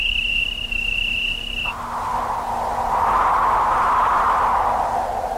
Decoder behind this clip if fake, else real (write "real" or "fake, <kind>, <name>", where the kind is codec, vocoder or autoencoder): real